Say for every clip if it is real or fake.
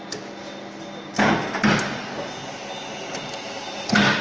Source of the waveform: real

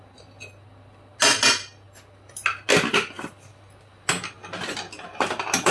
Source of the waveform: real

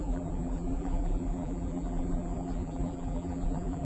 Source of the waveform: fake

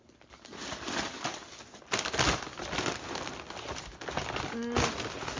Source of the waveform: real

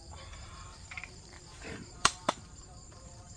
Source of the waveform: fake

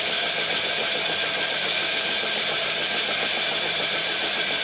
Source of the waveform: fake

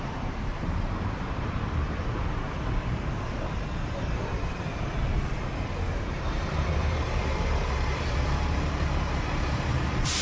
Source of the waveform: fake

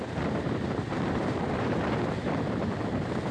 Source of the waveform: fake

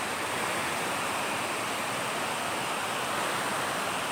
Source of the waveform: real